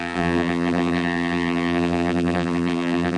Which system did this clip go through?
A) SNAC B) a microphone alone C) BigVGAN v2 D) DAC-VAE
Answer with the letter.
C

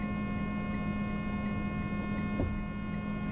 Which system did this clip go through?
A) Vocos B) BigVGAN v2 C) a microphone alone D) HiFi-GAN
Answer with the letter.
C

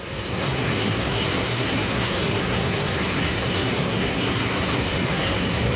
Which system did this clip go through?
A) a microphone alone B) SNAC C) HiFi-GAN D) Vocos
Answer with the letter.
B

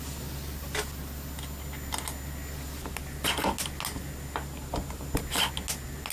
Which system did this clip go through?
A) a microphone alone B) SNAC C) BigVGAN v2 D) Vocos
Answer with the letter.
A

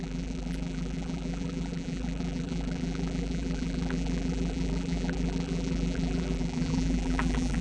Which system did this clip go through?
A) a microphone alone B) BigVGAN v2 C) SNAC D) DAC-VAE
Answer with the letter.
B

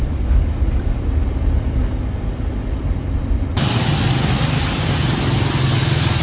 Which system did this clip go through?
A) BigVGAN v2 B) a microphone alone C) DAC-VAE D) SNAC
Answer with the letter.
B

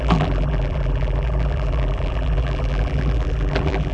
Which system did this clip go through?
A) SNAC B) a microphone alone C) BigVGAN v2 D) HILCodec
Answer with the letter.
C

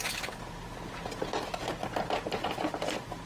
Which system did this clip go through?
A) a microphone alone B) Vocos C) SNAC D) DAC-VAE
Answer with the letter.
A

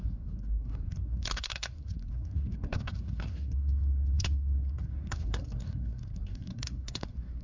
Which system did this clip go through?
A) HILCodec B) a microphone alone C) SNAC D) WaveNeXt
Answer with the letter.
C